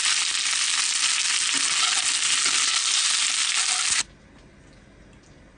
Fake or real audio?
real